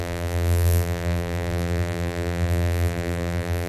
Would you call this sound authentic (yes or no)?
no